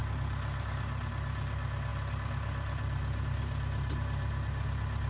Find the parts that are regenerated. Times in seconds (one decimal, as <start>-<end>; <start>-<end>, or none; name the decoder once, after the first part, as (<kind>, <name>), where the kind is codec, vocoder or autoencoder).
none